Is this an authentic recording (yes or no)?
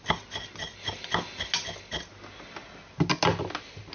yes